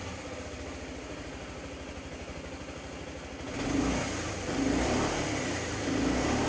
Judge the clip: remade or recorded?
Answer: recorded